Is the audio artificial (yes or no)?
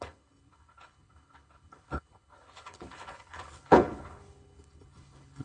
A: yes